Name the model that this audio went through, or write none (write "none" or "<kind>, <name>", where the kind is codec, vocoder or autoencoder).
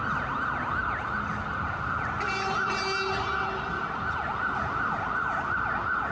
none